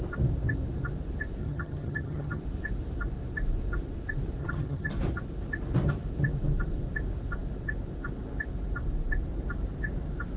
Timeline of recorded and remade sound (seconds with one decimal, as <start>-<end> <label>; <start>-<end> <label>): 0.0-1.4 recorded; 1.4-2.4 remade; 2.4-4.4 recorded; 4.4-4.9 remade; 4.9-10.4 recorded